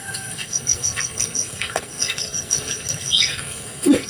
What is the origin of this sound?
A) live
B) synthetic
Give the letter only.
B